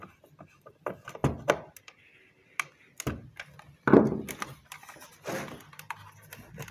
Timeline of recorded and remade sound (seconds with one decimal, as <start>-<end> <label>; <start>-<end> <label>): 0.0-6.7 recorded